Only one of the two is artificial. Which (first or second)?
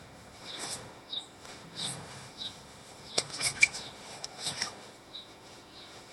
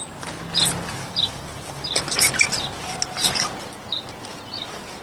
first